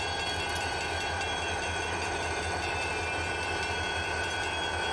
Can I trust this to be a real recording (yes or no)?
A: yes